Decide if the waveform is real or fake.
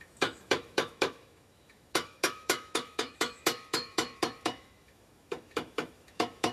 fake